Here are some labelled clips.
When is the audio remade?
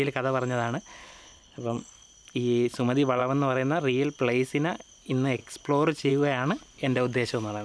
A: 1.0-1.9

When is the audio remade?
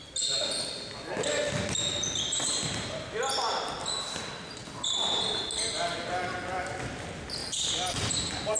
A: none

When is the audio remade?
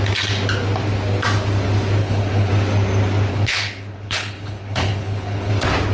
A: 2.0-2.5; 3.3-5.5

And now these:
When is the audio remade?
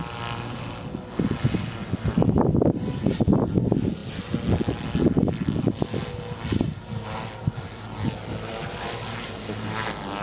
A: none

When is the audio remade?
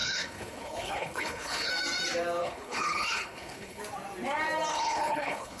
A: 0.0-1.7; 2.4-3.8; 4.7-5.6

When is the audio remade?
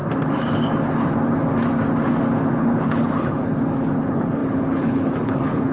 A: 2.6-5.7